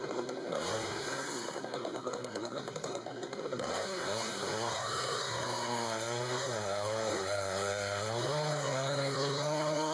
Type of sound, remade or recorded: remade